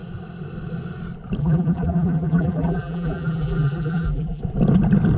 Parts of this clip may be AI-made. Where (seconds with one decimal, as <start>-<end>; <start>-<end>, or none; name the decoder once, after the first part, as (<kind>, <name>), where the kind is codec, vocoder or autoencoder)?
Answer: 1.4-4.4 (vocoder, BigVGAN v2)